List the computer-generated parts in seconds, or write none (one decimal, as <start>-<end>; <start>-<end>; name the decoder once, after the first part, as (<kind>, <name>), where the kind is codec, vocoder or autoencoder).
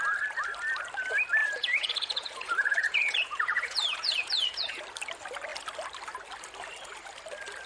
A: 1.4-4.8 (vocoder, Vocos)